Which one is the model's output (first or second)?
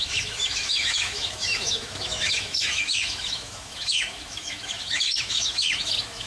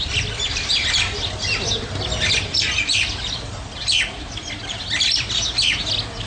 first